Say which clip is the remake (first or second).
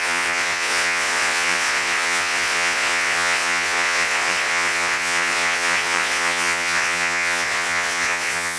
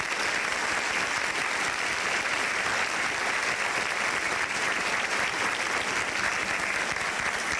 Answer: first